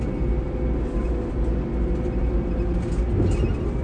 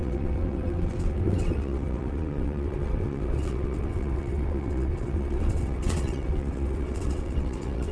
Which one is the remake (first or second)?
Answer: second